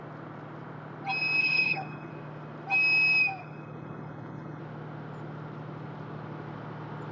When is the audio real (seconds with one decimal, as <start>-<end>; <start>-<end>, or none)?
0.0-1.4; 2.1-3.4; 4.6-7.1